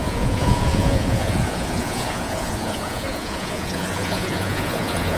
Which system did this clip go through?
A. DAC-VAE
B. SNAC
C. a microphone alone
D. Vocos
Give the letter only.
D